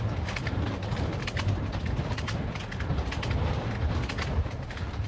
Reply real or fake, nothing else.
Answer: real